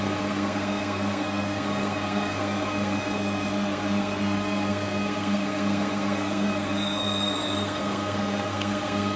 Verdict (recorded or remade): remade